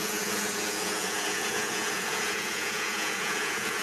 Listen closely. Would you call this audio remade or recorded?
remade